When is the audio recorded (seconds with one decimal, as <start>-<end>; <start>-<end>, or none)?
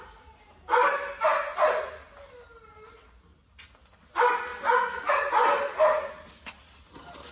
0.0-7.3